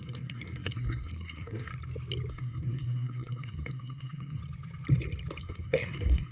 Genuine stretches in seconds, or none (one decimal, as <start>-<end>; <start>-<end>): 1.7-2.3; 4.4-5.4